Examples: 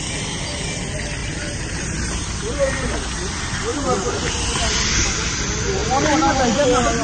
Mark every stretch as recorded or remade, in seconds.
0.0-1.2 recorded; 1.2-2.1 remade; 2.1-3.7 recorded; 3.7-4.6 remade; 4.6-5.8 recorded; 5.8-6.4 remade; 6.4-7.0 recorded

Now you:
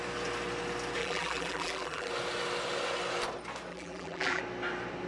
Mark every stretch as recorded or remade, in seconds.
0.0-1.0 recorded; 1.0-2.1 remade; 2.1-3.7 recorded; 3.7-4.4 remade; 4.4-5.1 recorded

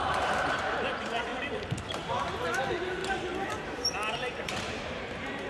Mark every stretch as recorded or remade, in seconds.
0.0-3.0 remade; 3.0-4.4 recorded; 4.4-5.5 remade

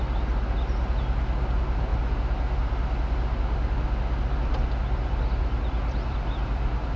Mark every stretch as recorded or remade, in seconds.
0.0-7.0 recorded

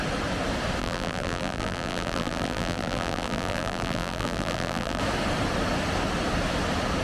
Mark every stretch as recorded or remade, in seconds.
0.0-0.8 recorded; 0.8-5.0 remade; 5.0-7.0 recorded